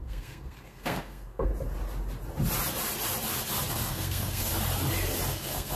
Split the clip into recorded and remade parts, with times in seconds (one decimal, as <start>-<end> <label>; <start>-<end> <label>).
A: 0.0-1.5 remade; 1.5-3.7 recorded; 3.7-4.5 remade; 4.5-5.3 recorded; 5.3-5.8 remade